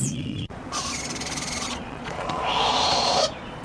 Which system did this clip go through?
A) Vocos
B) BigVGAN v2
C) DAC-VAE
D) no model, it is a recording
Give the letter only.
A